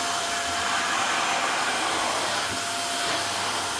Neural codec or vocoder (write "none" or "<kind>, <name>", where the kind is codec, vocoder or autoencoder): vocoder, BigVGAN v2